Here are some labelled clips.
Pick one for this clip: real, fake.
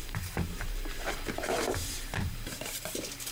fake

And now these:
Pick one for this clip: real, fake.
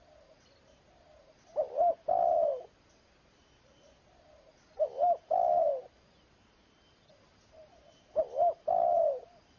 real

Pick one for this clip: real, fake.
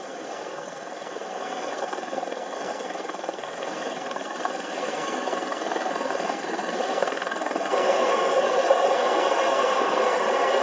fake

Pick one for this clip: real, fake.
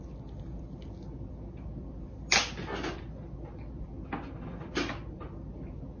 real